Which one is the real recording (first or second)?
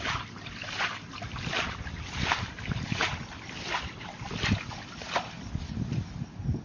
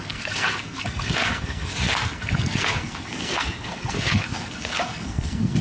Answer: first